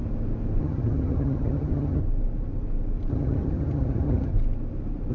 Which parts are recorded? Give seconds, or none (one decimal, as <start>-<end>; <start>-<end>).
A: 0.0-0.6; 2.0-3.1; 4.3-5.1